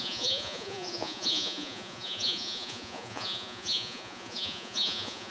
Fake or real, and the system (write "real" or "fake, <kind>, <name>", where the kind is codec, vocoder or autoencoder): fake, vocoder, Vocos